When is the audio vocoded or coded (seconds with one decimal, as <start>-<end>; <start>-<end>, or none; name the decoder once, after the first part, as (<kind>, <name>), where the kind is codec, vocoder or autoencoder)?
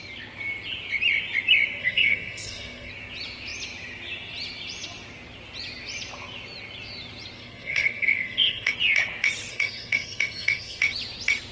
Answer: 1.8-2.9 (codec, SNAC); 7.4-8.7; 9.5-10.8